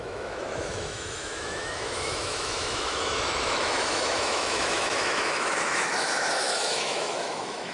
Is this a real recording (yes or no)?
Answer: no